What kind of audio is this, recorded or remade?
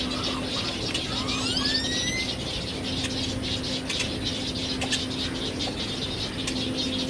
recorded